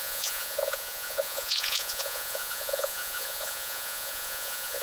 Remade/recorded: remade